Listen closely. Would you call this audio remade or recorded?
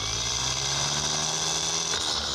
recorded